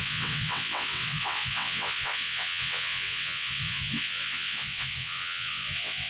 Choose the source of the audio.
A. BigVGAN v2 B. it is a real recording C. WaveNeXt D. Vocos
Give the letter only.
C